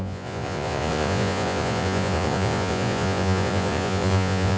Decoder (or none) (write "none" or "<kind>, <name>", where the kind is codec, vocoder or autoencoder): vocoder, Vocos